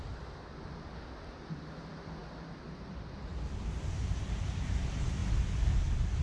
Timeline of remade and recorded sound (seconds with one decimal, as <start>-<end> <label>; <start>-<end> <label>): 0.0-6.2 recorded